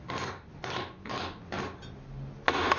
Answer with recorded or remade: recorded